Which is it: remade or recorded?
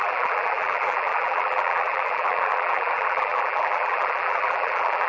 remade